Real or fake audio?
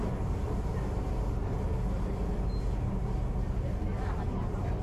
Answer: real